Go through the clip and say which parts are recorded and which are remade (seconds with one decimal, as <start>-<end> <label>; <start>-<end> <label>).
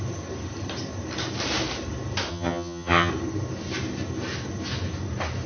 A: 0.0-2.3 recorded; 2.3-3.1 remade; 3.1-5.5 recorded